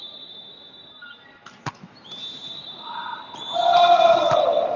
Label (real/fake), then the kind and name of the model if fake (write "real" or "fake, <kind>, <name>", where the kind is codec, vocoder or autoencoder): real